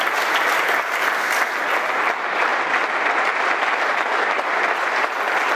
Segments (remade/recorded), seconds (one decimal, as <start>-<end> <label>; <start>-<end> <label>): 0.0-5.6 recorded